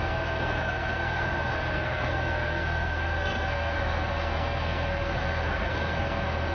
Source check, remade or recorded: remade